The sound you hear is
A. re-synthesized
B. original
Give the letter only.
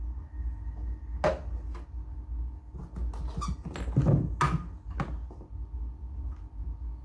B